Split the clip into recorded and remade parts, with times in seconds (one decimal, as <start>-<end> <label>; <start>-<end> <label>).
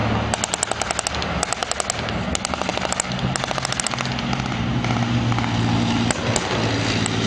0.0-7.3 recorded